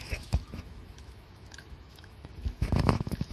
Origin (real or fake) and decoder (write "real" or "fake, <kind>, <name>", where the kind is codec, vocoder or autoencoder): fake, autoencoder, DAC-VAE